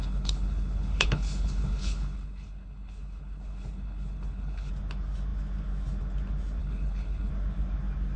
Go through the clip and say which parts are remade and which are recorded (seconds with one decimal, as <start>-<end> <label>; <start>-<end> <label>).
0.0-4.7 remade; 4.7-6.6 recorded; 6.6-7.3 remade; 7.3-8.2 recorded